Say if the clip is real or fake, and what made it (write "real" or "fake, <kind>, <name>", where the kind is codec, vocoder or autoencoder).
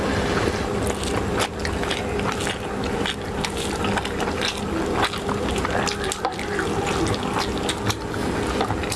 real